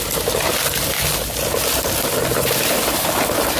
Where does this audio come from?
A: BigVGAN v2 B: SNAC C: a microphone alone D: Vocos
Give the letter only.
C